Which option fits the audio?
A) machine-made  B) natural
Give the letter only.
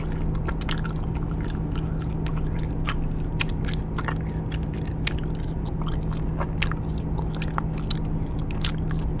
B